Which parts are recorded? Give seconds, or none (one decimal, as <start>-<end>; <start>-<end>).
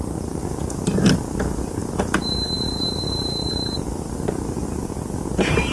none